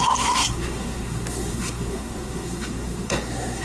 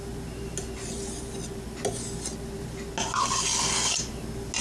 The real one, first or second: second